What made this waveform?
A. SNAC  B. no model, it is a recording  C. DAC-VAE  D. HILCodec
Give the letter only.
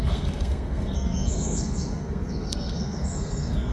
A